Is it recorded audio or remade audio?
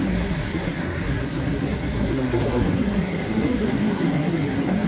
remade